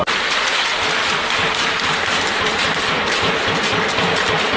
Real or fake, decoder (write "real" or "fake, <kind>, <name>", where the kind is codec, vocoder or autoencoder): real